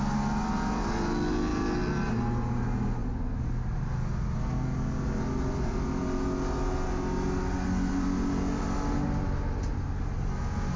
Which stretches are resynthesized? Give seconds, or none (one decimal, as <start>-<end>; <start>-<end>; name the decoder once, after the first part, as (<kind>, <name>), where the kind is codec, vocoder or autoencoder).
none